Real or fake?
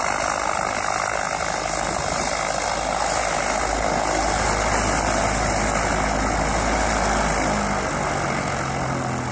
real